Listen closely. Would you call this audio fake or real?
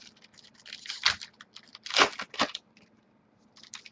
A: real